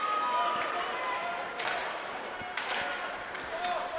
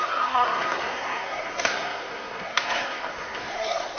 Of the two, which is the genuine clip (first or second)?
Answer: first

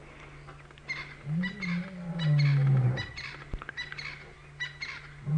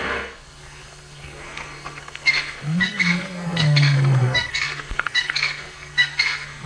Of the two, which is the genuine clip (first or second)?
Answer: first